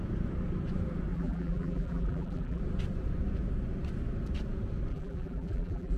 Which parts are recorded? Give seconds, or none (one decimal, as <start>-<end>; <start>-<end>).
0.0-1.1; 2.6-4.9